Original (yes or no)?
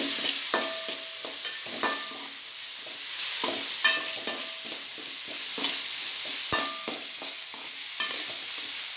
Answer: yes